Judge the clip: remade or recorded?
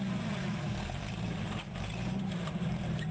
remade